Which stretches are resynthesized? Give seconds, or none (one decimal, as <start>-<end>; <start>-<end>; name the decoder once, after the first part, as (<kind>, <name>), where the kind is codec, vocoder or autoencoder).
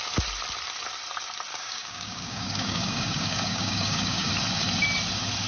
1.5-4.3 (codec, DAC)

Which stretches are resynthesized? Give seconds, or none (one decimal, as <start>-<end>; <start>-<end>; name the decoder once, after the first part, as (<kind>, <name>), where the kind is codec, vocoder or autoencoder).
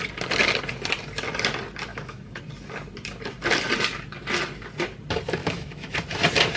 1.9-2.4 (autoencoder, DAC-VAE); 5.4-6.0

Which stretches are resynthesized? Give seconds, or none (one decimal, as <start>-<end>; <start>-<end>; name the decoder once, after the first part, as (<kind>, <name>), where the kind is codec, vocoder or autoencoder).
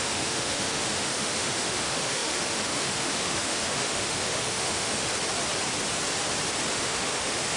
0.0-5.1 (autoencoder, DAC-VAE); 6.7-7.6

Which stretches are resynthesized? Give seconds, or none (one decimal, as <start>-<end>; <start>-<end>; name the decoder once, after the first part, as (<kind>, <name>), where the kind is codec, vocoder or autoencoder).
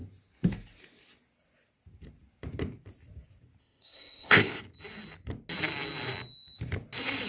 3.6-4.6 (codec, ZipCodec)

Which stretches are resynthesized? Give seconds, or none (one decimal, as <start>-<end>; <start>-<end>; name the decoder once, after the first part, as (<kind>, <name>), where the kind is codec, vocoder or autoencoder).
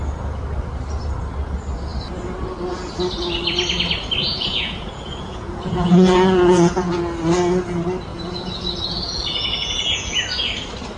4.2-7.0 (vocoder, Vocos); 8.1-10.2